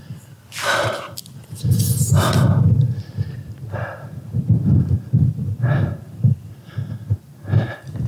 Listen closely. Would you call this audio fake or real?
fake